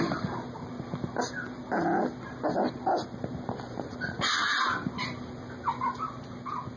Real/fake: real